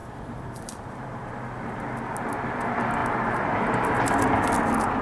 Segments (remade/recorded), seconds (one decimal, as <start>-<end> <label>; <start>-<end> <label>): 0.0-1.3 remade; 1.3-5.0 recorded